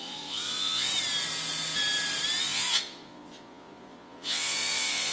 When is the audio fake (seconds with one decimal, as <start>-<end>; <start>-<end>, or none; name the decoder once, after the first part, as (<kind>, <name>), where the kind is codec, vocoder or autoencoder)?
0.0-0.9 (vocoder, Vocos); 2.4-5.1